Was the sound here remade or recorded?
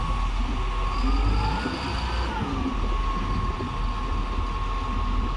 recorded